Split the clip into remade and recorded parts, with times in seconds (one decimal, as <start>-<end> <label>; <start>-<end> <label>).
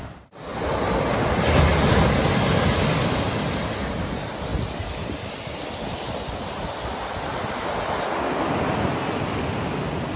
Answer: 0.0-10.2 recorded